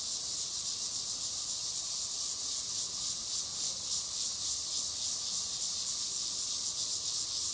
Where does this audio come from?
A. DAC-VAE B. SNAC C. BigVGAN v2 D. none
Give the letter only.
D